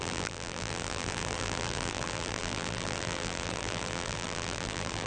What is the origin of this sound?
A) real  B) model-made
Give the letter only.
B